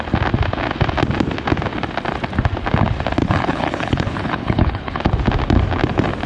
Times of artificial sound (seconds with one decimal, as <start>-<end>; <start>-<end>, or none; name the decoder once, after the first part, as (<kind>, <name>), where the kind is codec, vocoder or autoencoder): 3.2-5.0 (codec, HILCodec)